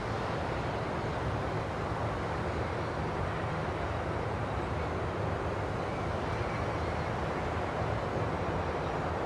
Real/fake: real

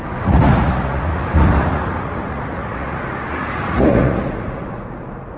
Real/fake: fake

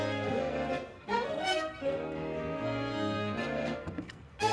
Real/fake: fake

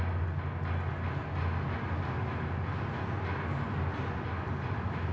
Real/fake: real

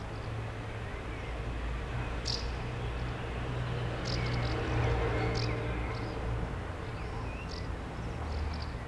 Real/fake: real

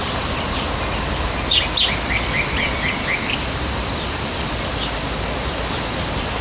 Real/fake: real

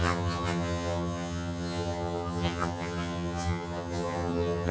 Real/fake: fake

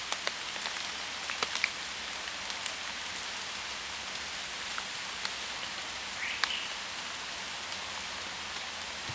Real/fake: real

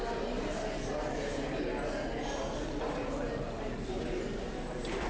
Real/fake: real